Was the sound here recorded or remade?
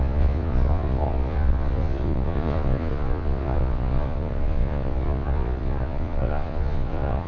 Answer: remade